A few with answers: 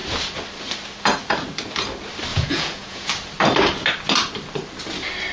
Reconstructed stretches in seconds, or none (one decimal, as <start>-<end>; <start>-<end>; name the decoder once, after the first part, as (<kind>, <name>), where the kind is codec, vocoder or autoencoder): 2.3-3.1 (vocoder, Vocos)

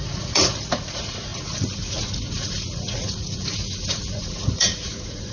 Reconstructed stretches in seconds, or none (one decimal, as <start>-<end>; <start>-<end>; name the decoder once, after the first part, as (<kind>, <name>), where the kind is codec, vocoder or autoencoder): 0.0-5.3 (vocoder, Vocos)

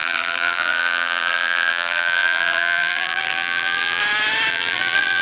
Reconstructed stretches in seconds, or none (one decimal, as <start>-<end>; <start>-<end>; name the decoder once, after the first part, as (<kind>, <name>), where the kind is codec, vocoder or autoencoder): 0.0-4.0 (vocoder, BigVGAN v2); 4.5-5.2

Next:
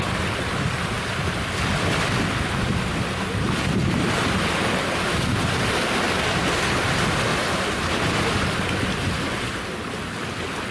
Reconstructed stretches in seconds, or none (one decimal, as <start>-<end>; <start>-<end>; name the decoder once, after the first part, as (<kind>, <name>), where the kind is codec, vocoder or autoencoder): 7.3-8.3 (vocoder, BigVGAN v2)